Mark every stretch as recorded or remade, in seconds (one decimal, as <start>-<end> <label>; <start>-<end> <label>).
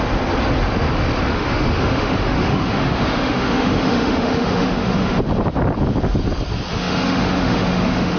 0.0-1.3 recorded; 1.3-5.2 remade; 5.2-6.7 recorded; 6.7-8.2 remade